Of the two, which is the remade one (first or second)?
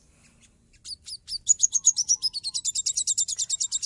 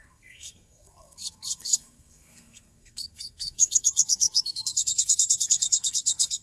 second